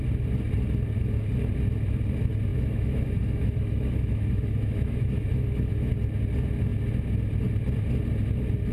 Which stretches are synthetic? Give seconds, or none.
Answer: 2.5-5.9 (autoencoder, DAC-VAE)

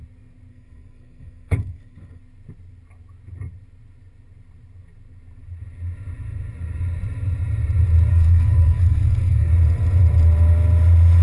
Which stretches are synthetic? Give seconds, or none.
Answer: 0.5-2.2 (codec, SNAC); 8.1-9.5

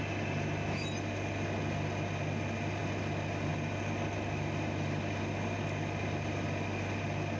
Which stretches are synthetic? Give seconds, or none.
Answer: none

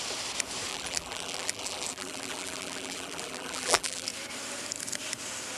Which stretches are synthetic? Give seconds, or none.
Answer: 0.7-4.1 (vocoder, BigVGAN v2)